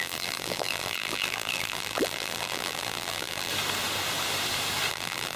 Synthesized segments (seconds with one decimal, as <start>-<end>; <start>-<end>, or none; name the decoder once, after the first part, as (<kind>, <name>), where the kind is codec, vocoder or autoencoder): 0.0-3.5 (vocoder, BigVGAN v2); 4.9-5.4